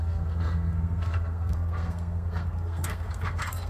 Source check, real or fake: fake